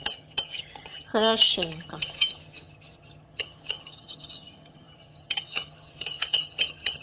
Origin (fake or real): fake